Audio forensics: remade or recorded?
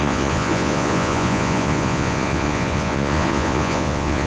remade